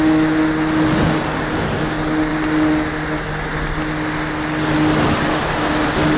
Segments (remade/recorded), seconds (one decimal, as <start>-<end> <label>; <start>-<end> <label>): 0.0-6.2 recorded